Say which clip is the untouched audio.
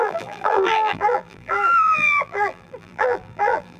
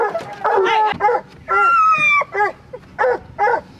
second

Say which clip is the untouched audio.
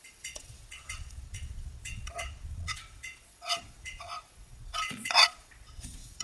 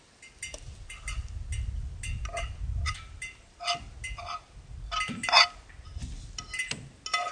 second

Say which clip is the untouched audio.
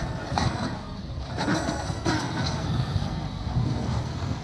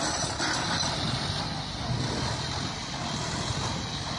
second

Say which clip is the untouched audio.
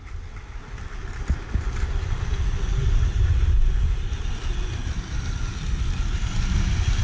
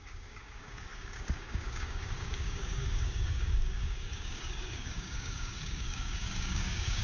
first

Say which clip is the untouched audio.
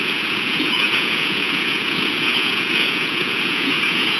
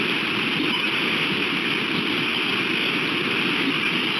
second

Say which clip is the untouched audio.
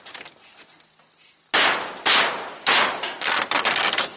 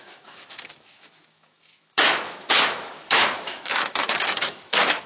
first